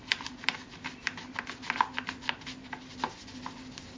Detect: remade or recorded recorded